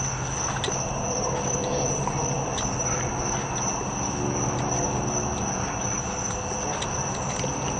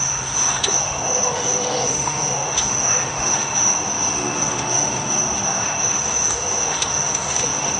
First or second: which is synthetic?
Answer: second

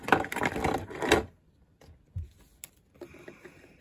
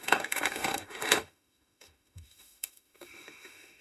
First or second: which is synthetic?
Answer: second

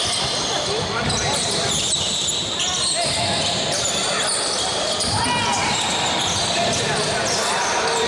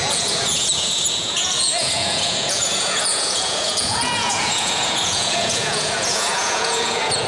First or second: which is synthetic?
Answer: second